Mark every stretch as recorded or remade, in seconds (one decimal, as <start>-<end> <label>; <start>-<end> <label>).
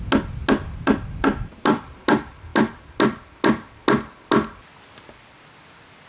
0.0-0.6 recorded; 0.6-1.8 remade; 1.8-6.1 recorded